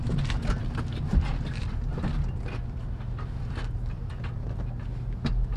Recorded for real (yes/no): no